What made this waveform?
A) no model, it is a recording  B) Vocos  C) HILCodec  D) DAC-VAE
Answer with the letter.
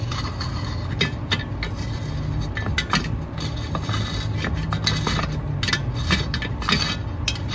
A